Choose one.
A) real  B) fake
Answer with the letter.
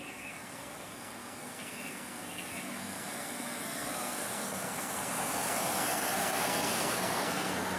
B